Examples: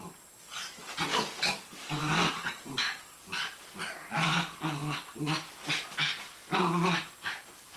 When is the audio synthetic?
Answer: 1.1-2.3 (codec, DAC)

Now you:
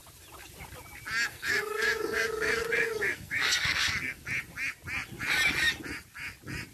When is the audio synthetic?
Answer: 1.3-4.2 (codec, SNAC)

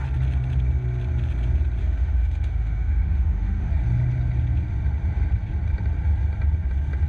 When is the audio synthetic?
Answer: 1.8-3.7 (autoencoder, DAC-VAE)

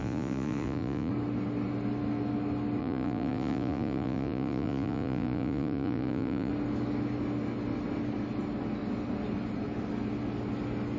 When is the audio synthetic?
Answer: 0.0-1.1 (vocoder, Vocos); 2.8-6.5